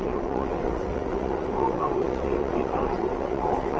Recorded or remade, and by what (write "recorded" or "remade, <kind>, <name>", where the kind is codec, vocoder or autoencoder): remade, vocoder, WaveNeXt